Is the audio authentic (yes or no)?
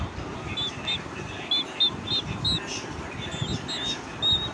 yes